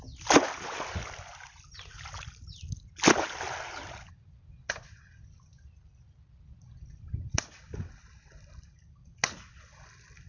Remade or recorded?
recorded